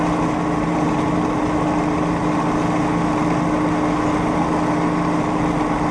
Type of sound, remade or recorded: recorded